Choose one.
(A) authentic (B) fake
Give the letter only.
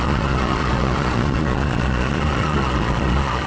B